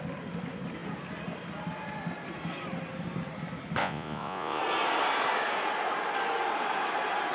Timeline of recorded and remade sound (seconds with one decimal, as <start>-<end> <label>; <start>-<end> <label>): 0.0-3.8 recorded; 3.8-4.6 remade; 4.6-7.3 recorded